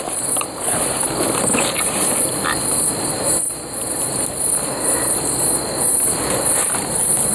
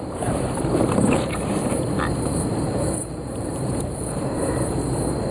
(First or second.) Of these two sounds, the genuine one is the first